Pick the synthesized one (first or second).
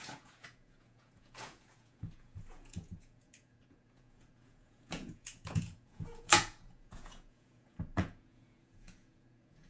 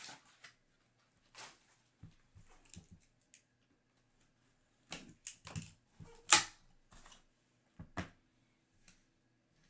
first